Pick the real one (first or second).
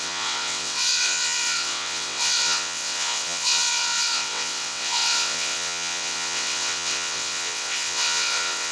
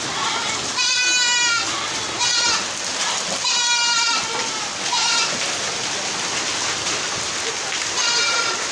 second